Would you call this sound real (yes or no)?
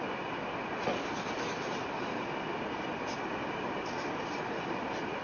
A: yes